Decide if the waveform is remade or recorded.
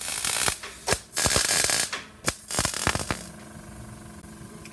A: recorded